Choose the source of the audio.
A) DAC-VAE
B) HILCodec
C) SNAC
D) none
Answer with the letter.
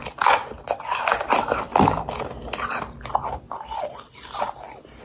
D